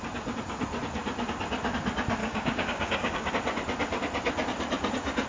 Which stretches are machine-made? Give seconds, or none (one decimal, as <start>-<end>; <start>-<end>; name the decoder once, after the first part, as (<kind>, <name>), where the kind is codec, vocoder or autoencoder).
2.2-3.3 (codec, DAC)